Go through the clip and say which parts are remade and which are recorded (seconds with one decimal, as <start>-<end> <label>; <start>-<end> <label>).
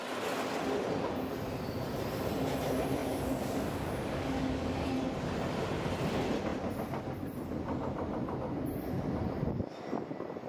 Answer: 0.0-3.0 recorded; 3.0-4.9 remade; 4.9-10.5 recorded